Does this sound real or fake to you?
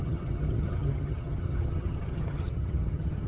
fake